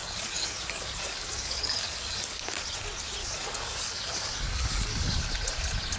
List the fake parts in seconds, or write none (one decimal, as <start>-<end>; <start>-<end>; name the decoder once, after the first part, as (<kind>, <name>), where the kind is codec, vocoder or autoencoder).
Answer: 0.0-2.6 (codec, DAC); 3.2-5.2

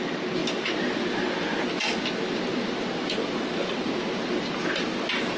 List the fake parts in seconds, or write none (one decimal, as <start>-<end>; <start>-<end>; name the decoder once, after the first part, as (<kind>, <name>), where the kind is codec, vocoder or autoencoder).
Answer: none

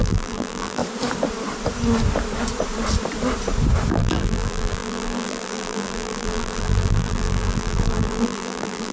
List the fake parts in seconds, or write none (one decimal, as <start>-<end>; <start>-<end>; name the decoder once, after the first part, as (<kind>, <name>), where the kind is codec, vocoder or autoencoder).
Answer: 0.0-0.8 (vocoder, BigVGAN v2); 3.9-8.9

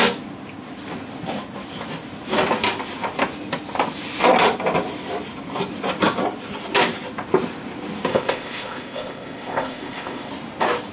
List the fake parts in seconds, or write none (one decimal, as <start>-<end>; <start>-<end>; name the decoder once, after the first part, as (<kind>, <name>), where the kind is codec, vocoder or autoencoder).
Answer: 8.1-10.3 (codec, ZipCodec)